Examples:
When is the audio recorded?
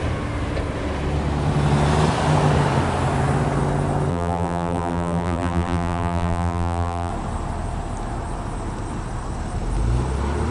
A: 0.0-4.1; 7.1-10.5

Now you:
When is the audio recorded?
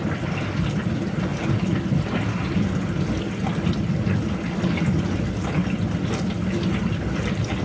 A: 0.0-7.6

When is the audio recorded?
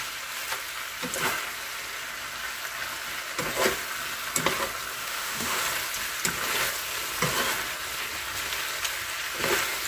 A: 0.0-5.0; 5.6-9.9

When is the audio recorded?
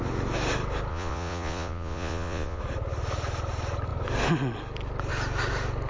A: 0.0-0.9; 2.6-5.9